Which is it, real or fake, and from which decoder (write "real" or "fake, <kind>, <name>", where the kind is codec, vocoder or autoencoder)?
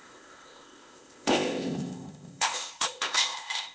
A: fake, codec, ZipCodec